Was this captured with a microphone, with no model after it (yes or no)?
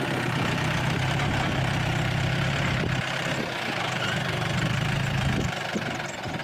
no